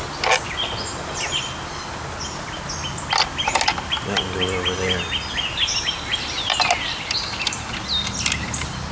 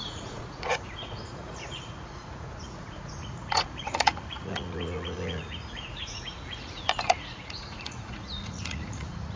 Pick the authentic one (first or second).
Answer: first